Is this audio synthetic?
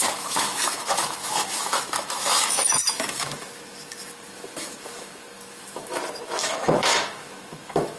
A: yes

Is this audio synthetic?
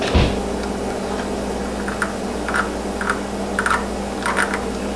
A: no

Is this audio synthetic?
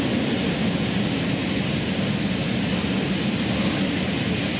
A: no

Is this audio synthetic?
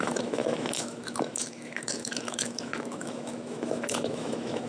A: yes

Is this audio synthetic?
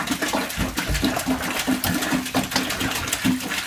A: no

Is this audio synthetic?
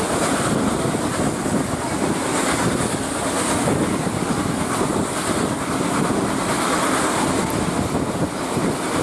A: no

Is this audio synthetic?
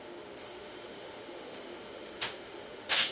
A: yes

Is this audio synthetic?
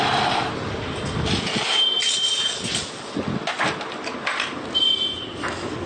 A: no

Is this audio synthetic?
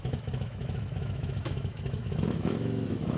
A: yes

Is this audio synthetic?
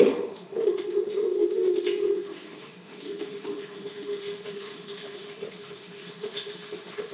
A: yes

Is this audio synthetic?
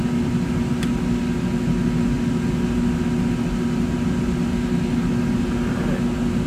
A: no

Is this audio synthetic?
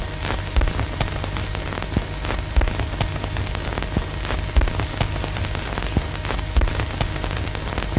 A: no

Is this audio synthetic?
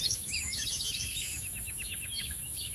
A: yes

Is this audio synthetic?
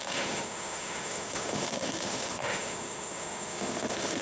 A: yes